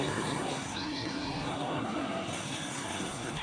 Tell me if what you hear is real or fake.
fake